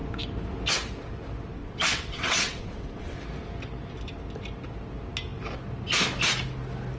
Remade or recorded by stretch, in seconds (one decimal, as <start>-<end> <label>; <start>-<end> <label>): 0.0-1.6 recorded; 1.6-3.2 remade; 3.2-7.0 recorded